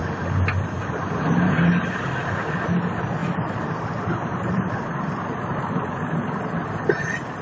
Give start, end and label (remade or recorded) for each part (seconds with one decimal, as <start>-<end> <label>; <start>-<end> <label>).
0.0-3.2 recorded; 3.2-6.0 remade; 6.0-7.4 recorded